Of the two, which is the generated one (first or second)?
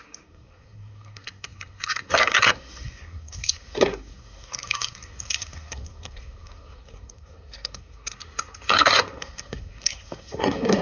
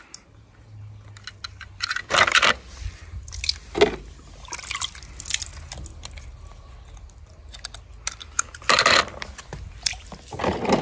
first